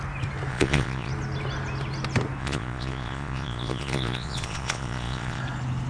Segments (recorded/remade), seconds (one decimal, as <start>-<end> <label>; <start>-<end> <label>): 0.0-0.5 recorded; 0.5-1.1 remade; 1.1-2.4 recorded; 2.4-5.4 remade; 5.4-5.9 recorded